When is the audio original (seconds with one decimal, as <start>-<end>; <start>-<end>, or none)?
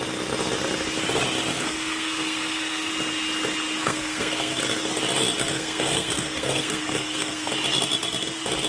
0.0-1.5; 2.9-3.8; 4.6-5.5; 7.5-8.7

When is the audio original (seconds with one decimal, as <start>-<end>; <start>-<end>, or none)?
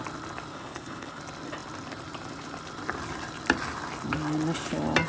0.0-0.5; 1.2-5.1